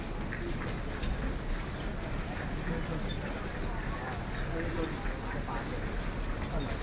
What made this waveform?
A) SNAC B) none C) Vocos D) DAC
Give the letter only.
B